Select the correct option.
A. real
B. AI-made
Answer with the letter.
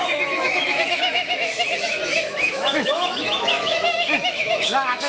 B